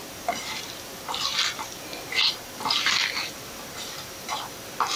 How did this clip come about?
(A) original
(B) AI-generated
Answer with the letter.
A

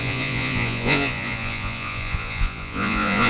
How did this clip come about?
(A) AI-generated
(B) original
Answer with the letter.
A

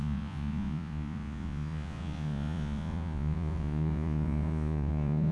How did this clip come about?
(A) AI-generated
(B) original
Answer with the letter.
A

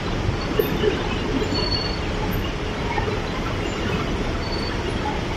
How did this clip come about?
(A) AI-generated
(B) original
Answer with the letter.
B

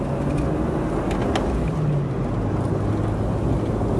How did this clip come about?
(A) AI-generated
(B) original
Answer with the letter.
B